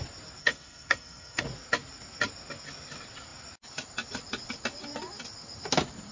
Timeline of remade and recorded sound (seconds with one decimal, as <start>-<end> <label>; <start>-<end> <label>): 0.0-0.4 recorded; 0.4-1.4 remade; 1.4-6.1 recorded

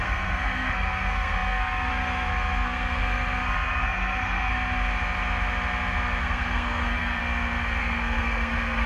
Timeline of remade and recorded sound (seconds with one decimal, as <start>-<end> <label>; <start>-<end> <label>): 0.0-4.5 remade; 4.5-6.2 recorded; 6.2-7.2 remade; 7.2-7.8 recorded; 7.8-8.9 remade

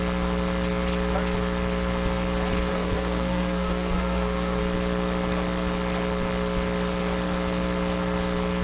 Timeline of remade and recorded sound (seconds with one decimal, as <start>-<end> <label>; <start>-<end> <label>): 0.0-2.7 recorded; 2.7-4.6 remade; 4.6-8.6 recorded

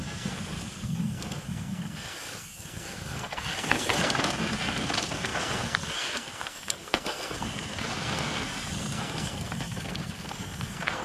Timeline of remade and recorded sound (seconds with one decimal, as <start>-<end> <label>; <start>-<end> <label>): 0.0-11.0 remade

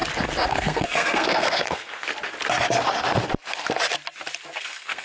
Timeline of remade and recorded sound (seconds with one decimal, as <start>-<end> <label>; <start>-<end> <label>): 0.0-0.5 recorded; 0.5-2.1 remade; 2.1-4.6 recorded; 4.6-5.0 remade

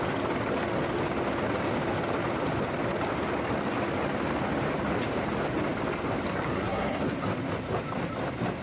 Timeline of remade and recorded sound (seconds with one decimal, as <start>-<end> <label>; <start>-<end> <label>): 0.0-6.3 recorded; 6.3-7.0 remade; 7.0-8.6 recorded